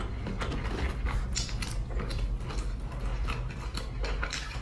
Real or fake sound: real